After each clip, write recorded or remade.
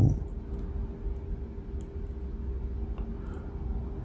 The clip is recorded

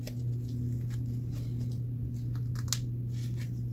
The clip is recorded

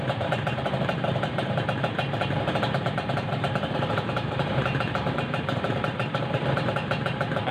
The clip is remade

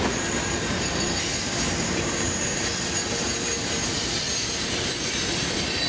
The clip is remade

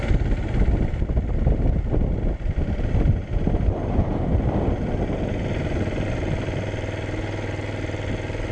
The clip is recorded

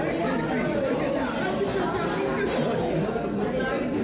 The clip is recorded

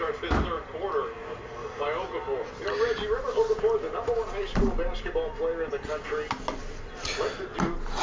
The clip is recorded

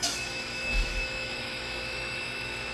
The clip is remade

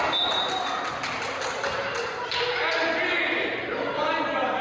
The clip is recorded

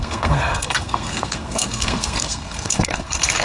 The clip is remade